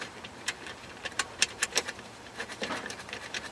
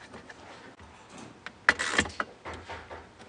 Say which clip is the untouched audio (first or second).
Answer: second